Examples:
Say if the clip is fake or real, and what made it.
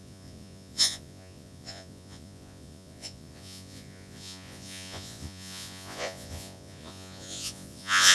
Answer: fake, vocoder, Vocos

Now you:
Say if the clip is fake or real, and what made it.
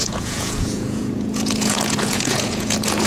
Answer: fake, vocoder, Vocos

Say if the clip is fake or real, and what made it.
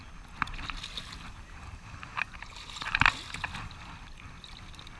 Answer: real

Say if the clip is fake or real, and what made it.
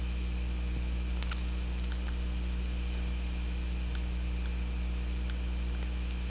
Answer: real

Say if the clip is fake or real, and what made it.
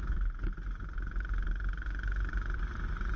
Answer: real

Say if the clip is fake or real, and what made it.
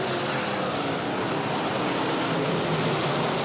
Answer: real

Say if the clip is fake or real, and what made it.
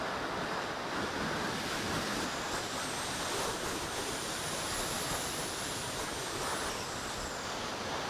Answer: real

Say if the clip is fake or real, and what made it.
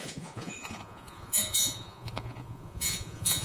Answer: fake, vocoder, Vocos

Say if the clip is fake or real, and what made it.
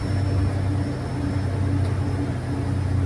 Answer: real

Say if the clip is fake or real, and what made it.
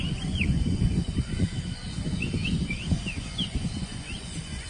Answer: fake, vocoder, Vocos